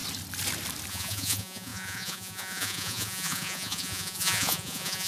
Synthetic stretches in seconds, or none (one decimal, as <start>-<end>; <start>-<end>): 0.9-5.1